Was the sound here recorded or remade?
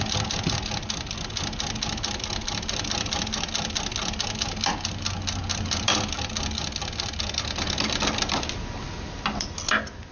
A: recorded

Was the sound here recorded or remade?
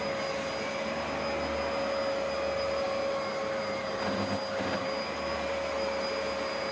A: recorded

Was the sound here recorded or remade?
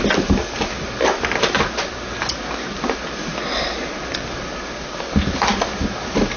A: recorded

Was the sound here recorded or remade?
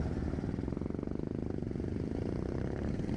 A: recorded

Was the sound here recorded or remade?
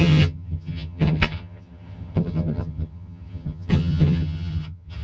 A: remade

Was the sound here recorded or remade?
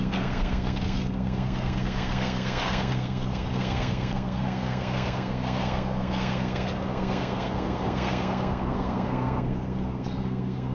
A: remade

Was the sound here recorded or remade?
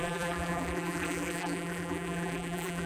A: remade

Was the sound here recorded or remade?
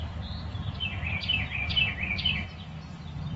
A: remade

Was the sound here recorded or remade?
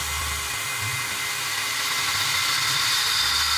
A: recorded